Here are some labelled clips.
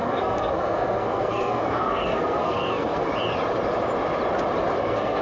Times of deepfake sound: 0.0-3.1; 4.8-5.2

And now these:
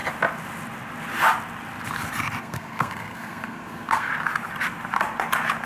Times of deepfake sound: 2.4-4.1

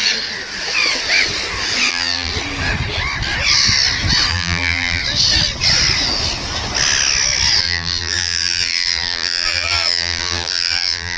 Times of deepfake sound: 1.9-2.3; 4.3-5.0; 7.6-11.2

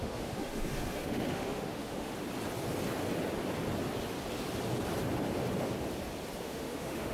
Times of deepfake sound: 0.0-2.1; 6.4-7.1

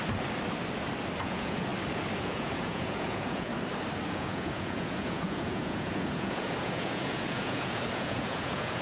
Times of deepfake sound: 1.2-1.7; 2.2-3.5; 4.1-8.8

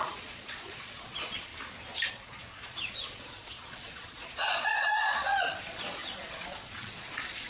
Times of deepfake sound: 0.0-1.5; 2.1-7.5

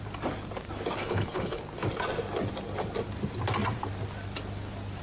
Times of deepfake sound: 1.0-1.6

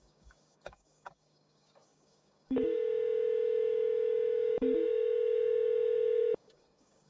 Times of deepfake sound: 0.0-7.1